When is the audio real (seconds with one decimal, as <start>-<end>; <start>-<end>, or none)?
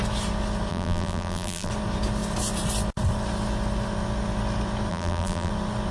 0.0-0.7; 1.7-4.9; 5.5-5.9